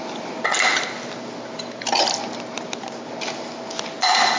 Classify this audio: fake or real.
real